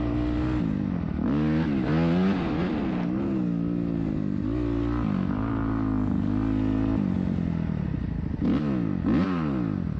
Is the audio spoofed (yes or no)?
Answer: no